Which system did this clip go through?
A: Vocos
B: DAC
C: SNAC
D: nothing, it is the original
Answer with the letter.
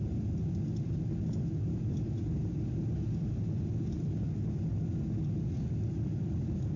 D